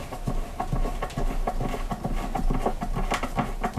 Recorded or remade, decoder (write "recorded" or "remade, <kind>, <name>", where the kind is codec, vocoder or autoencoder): recorded